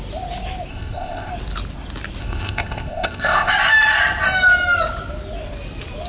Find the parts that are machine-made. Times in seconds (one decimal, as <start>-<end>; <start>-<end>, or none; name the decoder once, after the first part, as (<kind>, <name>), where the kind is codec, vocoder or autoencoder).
0.7-1.3 (codec, ZipCodec); 2.2-3.5